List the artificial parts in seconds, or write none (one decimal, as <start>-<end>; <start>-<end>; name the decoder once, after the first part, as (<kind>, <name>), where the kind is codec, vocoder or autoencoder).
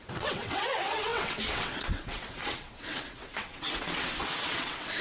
0.0-5.0 (vocoder, WaveNeXt)